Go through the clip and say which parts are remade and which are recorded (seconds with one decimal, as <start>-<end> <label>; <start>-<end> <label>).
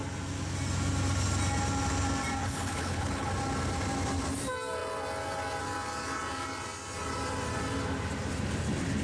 0.0-2.4 recorded; 2.4-3.3 remade; 3.3-9.0 recorded